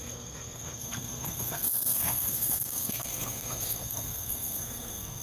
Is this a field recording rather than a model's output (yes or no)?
no